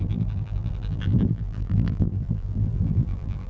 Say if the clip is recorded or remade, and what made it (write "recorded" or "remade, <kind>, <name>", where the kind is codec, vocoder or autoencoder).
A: remade, vocoder, BigVGAN v2